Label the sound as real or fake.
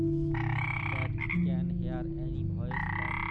real